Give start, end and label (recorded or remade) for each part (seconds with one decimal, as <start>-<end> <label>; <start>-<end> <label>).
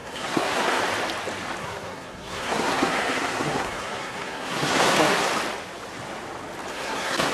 0.0-0.8 remade; 0.8-1.6 recorded; 1.6-5.3 remade; 5.3-6.7 recorded; 6.7-7.3 remade